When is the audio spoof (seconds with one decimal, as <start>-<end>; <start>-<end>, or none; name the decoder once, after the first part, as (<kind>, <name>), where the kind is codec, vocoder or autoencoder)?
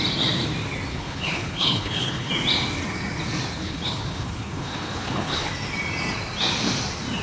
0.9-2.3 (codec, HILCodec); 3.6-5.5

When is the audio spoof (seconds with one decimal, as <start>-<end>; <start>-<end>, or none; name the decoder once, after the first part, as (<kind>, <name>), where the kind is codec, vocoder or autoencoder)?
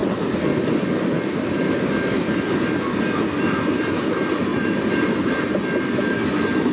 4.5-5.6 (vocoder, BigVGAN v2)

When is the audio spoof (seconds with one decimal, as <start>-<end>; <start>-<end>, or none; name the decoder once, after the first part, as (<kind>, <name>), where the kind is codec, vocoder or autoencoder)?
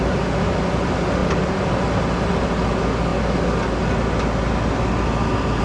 none